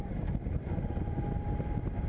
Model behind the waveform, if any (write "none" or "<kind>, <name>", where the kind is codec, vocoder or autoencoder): none